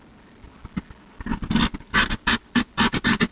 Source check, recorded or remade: recorded